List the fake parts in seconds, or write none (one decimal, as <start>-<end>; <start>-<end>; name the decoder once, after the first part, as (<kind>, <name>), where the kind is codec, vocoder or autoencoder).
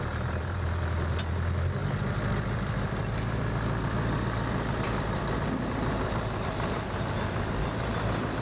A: 0.0-1.8 (vocoder, BigVGAN v2); 2.3-8.4